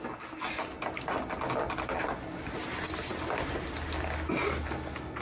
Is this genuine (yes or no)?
yes